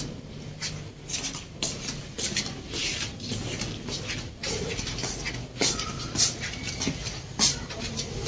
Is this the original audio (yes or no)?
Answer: yes